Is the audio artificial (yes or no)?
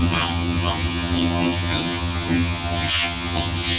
yes